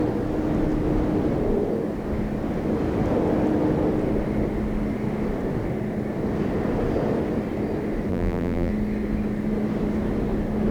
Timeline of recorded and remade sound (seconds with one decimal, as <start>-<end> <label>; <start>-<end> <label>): 0.0-8.1 recorded; 8.1-8.7 remade; 8.7-10.7 recorded